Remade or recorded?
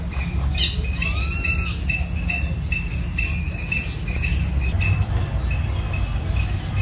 recorded